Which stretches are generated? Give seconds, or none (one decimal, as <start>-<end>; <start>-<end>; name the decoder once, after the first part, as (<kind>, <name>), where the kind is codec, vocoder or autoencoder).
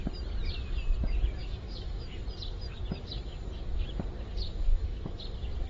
1.4-2.2 (autoencoder, DAC-VAE); 4.7-5.2